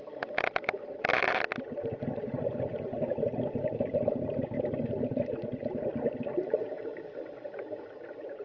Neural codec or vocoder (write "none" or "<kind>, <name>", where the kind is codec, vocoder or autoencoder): none